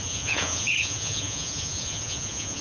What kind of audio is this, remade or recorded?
remade